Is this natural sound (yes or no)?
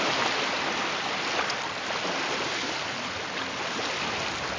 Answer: yes